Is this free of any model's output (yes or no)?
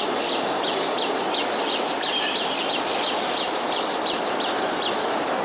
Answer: yes